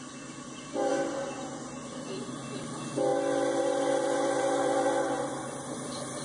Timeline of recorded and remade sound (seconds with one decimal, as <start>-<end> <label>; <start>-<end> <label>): 0.0-6.2 recorded